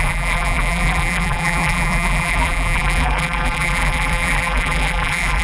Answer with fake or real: fake